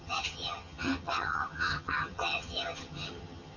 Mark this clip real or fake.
fake